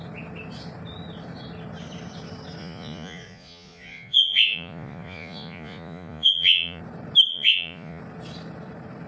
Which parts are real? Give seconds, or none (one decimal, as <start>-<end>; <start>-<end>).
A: 0.0-2.6; 6.8-7.3; 8.0-9.1